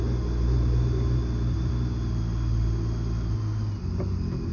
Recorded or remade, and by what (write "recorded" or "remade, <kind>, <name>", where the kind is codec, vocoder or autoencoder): recorded